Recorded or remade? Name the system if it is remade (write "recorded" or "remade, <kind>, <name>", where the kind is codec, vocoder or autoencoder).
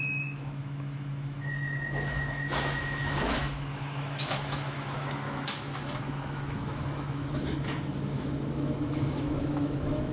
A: remade, autoencoder, DAC-VAE